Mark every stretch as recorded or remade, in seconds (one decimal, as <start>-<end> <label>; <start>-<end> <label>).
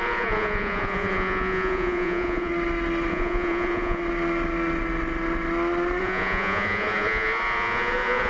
0.0-2.5 remade; 2.5-3.1 recorded; 3.1-4.0 remade; 4.0-6.0 recorded; 6.0-8.3 remade